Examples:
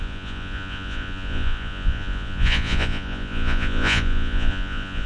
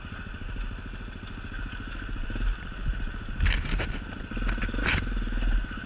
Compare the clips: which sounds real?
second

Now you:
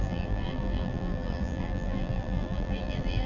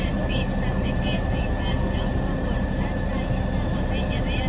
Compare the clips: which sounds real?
second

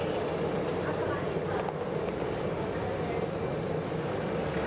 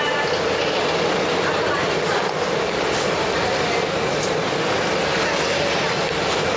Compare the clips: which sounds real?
first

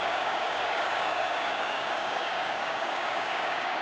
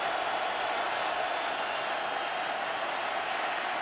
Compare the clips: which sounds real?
second